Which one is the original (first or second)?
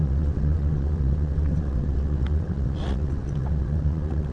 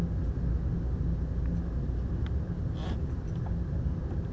second